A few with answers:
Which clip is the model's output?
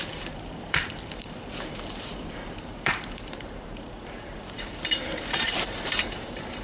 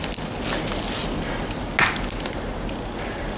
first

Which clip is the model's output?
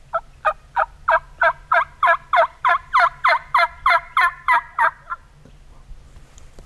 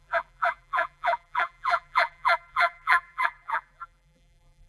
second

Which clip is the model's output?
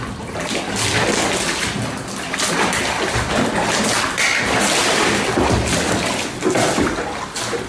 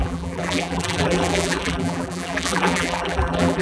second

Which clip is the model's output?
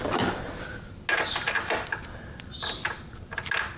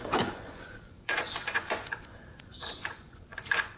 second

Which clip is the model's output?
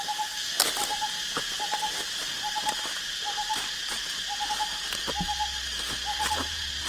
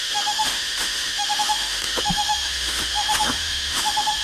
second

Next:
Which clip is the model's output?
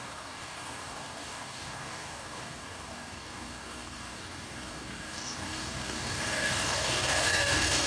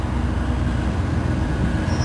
first